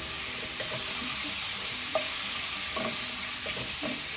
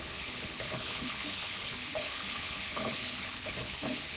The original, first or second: first